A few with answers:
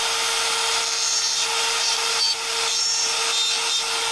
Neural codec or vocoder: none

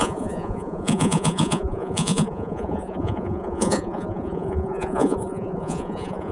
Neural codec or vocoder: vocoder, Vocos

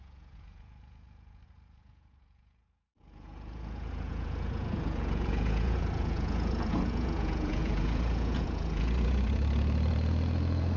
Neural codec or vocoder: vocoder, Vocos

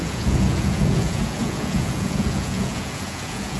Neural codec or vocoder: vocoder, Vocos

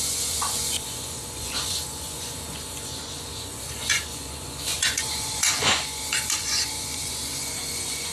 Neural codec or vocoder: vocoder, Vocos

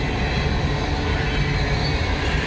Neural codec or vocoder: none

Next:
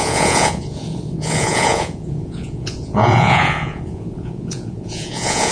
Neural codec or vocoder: vocoder, Vocos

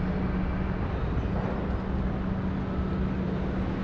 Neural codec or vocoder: none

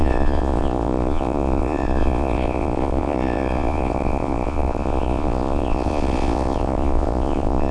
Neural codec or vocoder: vocoder, Vocos